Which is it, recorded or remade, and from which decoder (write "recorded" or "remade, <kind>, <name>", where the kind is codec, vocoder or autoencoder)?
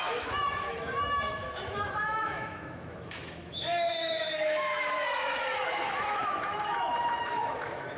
remade, autoencoder, DAC-VAE